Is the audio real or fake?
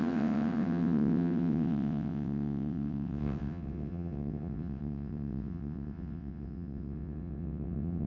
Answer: fake